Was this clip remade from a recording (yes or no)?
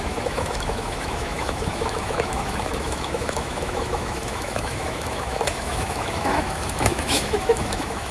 yes